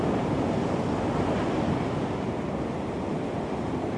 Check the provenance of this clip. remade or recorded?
recorded